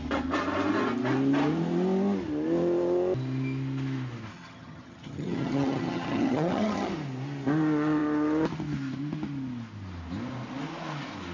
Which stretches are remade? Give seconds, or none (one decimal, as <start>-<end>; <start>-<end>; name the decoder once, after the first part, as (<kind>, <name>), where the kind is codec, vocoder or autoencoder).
4.3-6.9 (vocoder, HiFi-GAN)